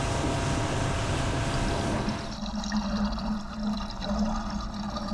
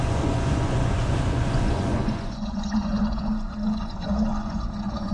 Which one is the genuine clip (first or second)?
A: first